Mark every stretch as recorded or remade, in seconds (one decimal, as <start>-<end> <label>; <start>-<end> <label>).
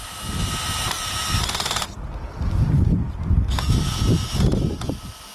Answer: 0.0-5.3 recorded